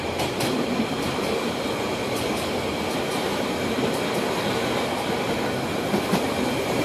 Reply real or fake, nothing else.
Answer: real